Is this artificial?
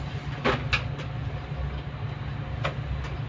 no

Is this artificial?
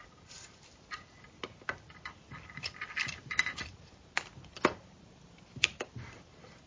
yes